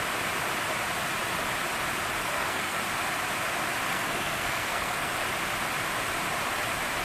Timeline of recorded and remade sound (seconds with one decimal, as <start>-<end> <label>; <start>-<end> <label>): 0.0-2.2 recorded; 2.2-2.8 remade; 2.8-3.9 recorded; 3.9-5.1 remade; 5.1-7.0 recorded